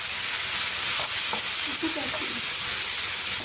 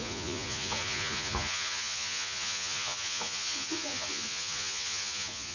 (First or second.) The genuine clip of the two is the first